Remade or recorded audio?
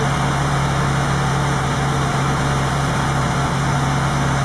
recorded